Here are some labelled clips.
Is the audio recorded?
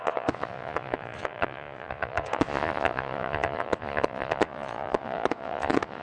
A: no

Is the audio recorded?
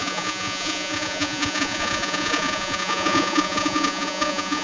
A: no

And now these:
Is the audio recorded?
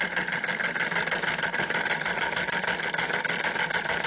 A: yes